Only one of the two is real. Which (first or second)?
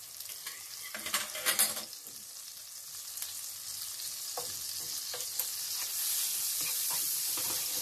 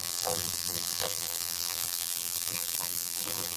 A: first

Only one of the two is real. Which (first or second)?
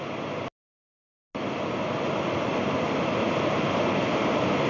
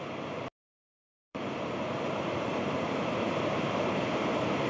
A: first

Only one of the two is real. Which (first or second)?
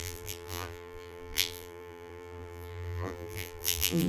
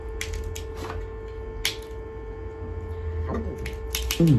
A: second